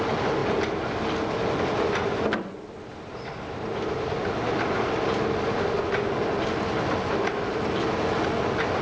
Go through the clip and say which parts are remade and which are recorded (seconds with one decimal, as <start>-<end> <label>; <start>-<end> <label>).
0.0-8.8 recorded